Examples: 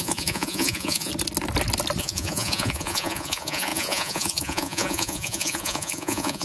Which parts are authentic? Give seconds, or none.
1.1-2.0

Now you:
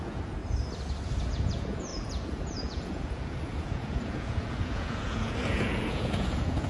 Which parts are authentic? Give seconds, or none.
0.4-1.2

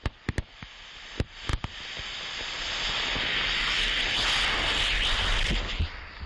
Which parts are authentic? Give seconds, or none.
0.0-6.3

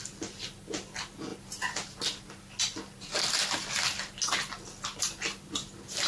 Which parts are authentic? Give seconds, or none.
0.0-6.1

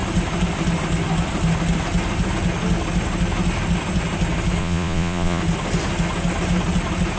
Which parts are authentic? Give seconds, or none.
0.0-4.6; 5.4-7.2

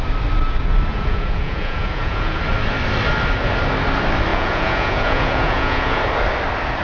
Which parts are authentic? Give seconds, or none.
0.0-0.9; 2.4-4.3; 6.0-6.8

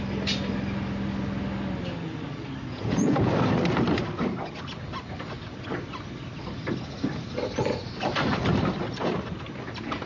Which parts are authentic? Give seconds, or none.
0.0-2.7; 3.3-10.1

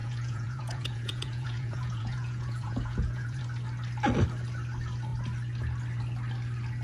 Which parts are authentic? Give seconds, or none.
3.4-6.8